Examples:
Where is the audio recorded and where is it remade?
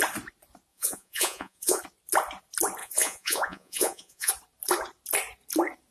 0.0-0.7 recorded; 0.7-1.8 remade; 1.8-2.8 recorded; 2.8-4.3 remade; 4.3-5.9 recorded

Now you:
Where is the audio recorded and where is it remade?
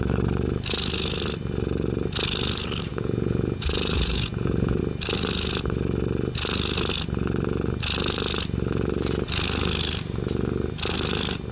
0.0-2.9 recorded; 2.9-4.8 remade; 4.8-11.5 recorded